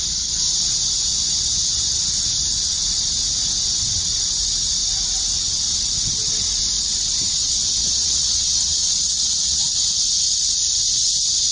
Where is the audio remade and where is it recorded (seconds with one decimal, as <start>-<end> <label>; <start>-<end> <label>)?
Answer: 0.0-7.8 recorded; 7.8-9.6 remade; 9.6-11.5 recorded